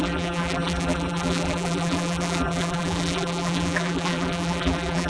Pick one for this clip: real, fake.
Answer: fake